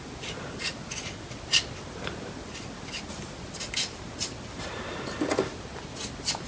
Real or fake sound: real